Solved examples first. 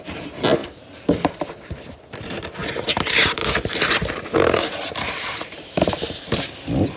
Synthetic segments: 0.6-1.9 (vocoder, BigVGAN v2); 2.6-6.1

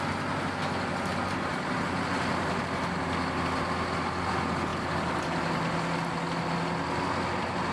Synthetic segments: 1.1-2.6 (vocoder, BigVGAN v2)